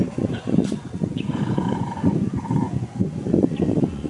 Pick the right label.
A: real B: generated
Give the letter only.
B